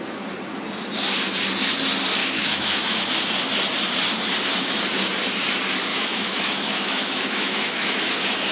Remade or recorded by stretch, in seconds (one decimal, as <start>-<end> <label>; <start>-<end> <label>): 0.0-2.2 recorded; 2.2-3.1 remade; 3.1-5.9 recorded; 5.9-8.5 remade